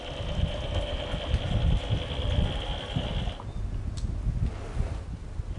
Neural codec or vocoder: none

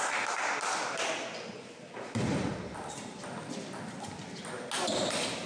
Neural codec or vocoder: none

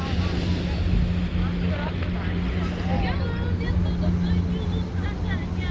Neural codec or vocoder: none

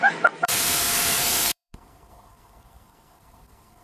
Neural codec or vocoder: codec, SNAC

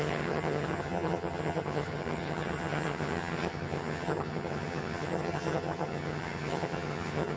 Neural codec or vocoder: vocoder, HiFi-GAN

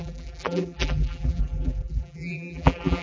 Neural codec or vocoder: vocoder, BigVGAN v2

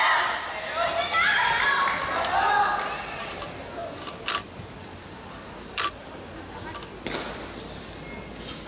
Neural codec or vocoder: none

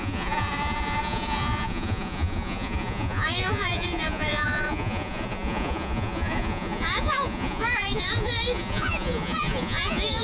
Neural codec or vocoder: vocoder, Vocos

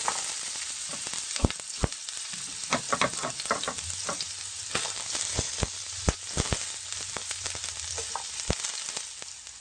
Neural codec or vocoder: vocoder, BigVGAN v2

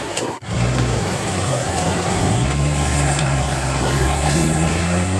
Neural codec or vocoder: codec, SNAC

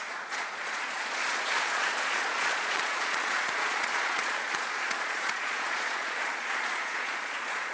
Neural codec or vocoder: vocoder, Vocos